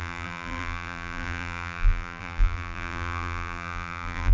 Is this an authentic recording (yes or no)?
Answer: no